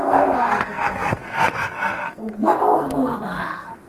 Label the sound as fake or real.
fake